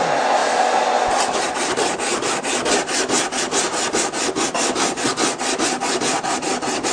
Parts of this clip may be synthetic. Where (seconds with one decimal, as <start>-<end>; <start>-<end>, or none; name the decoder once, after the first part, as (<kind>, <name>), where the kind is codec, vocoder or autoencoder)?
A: none

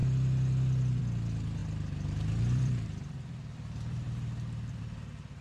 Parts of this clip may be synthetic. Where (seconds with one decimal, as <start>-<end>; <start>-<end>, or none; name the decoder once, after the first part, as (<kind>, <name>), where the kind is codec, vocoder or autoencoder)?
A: 1.6-4.8 (vocoder, BigVGAN v2)

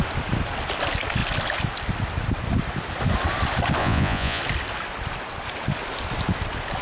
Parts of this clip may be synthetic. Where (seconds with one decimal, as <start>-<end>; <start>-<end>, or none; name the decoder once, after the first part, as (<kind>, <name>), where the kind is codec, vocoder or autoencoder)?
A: 3.8-4.4 (vocoder, Vocos)

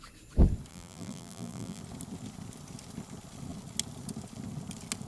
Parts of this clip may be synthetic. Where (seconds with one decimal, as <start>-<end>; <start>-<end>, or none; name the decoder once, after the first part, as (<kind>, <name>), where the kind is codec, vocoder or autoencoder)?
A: 0.7-1.8 (vocoder, BigVGAN v2)

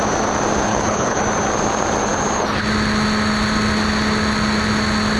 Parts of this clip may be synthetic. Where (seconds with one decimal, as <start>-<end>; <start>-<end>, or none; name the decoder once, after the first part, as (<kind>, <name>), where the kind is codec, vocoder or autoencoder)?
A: 0.7-1.2 (codec, HILCodec)